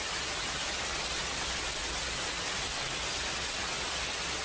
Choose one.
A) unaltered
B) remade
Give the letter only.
A